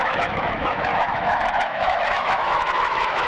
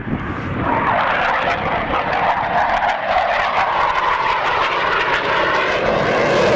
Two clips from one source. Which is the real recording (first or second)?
second